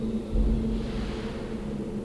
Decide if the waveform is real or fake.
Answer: real